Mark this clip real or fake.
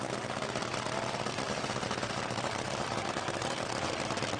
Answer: real